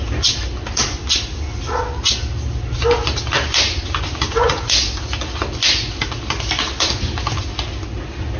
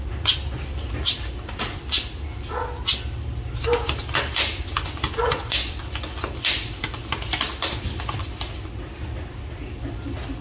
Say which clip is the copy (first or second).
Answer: second